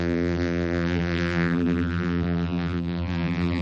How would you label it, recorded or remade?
remade